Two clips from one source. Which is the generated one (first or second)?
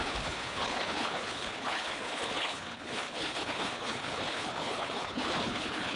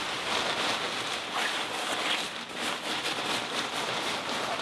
first